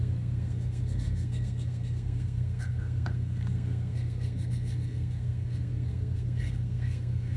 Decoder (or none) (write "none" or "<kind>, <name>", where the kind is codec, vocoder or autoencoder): codec, SNAC